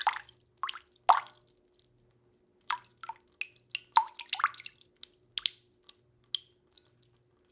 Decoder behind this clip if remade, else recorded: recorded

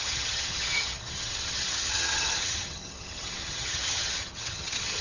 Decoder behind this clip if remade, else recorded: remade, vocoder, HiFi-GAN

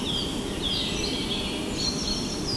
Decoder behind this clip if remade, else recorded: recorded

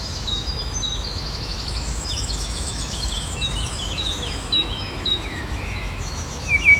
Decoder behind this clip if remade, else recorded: remade, autoencoder, DAC-VAE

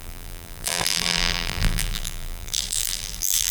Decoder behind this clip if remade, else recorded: remade, vocoder, BigVGAN v2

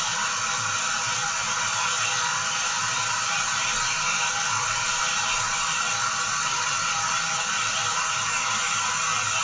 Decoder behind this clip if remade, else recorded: recorded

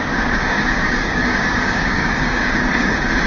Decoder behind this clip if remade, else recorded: remade, codec, DAC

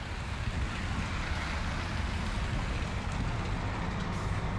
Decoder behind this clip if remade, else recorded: recorded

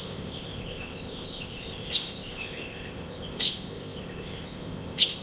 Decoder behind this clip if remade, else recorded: remade, codec, ZipCodec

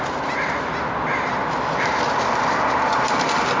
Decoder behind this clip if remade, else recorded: recorded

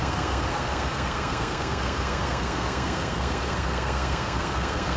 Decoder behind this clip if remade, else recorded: remade, codec, SNAC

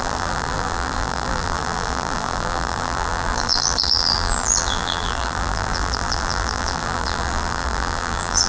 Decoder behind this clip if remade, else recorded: remade, vocoder, BigVGAN v2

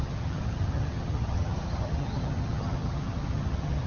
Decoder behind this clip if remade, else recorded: remade, vocoder, HiFi-GAN